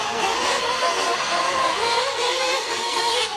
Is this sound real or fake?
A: fake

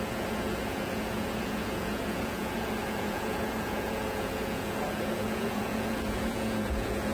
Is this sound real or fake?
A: fake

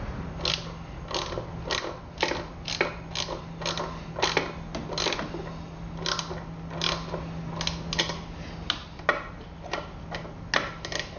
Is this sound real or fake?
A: real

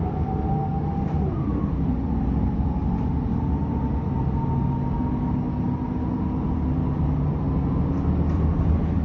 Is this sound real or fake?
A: real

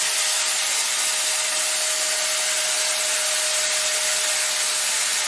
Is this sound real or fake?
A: real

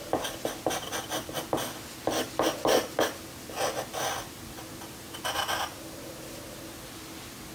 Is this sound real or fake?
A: real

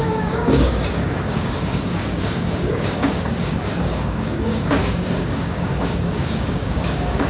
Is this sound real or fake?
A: fake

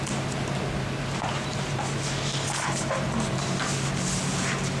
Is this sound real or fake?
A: real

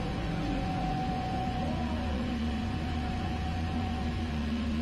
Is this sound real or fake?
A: fake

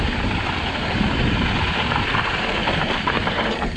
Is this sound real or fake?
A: fake